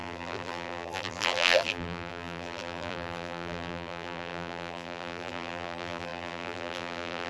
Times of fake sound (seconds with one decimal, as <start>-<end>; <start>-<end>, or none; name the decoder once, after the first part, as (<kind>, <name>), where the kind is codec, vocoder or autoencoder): 0.0-7.3 (vocoder, BigVGAN v2)